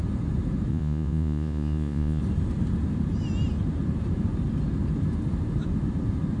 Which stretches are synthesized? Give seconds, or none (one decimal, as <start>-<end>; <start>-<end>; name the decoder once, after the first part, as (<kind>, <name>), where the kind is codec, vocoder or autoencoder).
0.7-2.2 (vocoder, Vocos)

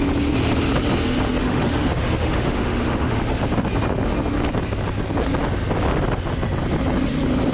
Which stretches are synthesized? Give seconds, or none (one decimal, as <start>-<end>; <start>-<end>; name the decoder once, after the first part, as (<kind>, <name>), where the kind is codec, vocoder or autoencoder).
1.4-3.4 (autoencoder, DAC-VAE)